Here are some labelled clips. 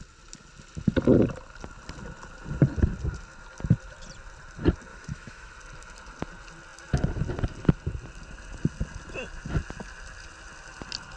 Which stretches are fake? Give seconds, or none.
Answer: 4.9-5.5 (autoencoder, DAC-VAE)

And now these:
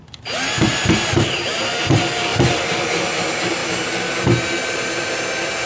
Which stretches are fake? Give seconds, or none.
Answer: 0.7-1.6 (vocoder, BigVGAN v2); 2.3-2.8

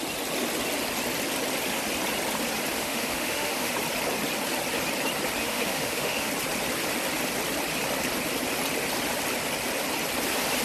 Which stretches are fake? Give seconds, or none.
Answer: 2.8-3.7 (autoencoder, DAC-VAE); 5.4-6.3

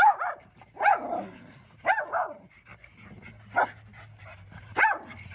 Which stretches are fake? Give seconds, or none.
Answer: 0.0-1.0 (vocoder, BigVGAN v2); 4.2-5.3

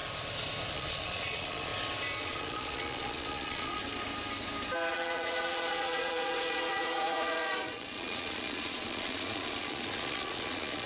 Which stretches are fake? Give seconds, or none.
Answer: 0.7-1.7 (vocoder, Vocos); 2.2-3.8; 4.9-10.9

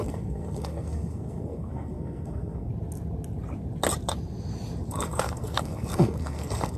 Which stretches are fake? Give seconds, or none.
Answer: 0.0-2.7 (codec, SNAC); 4.9-6.8

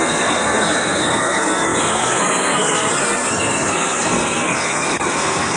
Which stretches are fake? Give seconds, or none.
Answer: 0.0-5.6 (codec, SNAC)